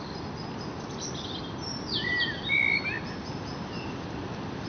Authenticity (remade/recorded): recorded